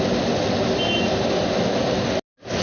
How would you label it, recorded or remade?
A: recorded